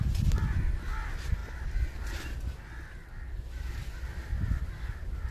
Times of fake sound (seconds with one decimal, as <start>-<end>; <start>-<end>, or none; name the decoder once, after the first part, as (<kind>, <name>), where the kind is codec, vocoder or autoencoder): none